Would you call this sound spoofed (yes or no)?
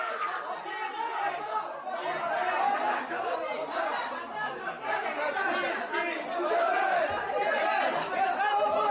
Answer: no